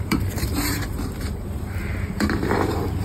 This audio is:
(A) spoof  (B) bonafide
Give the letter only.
A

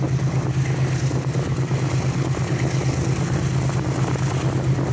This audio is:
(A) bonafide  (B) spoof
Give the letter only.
A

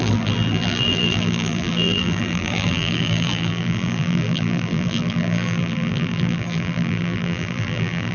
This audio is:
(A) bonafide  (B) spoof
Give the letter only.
B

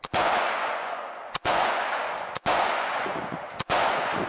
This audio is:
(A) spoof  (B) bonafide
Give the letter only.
A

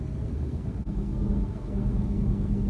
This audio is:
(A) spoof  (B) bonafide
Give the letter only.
A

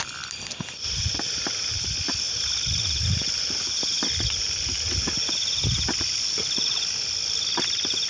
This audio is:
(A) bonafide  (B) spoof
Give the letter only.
A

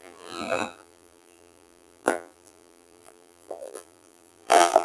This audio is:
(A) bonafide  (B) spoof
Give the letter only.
B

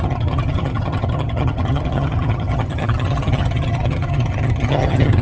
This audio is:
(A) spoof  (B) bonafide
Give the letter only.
A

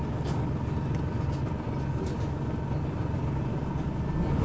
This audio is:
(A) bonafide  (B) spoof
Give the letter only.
A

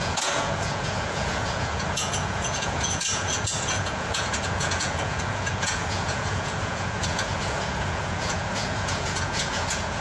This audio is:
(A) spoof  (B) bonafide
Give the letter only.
A